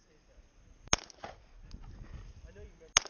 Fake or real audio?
real